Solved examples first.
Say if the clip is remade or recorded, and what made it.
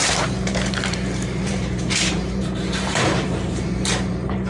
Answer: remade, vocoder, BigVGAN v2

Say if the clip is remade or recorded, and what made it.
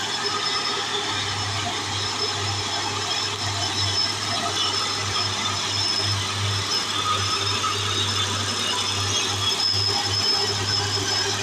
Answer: recorded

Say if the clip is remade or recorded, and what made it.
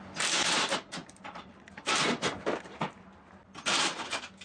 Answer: recorded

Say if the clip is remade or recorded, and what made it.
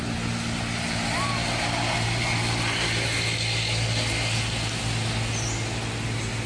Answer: recorded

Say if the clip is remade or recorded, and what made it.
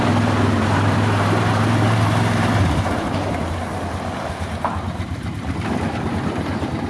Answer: remade, vocoder, BigVGAN v2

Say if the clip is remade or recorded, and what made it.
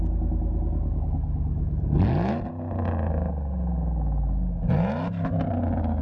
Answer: recorded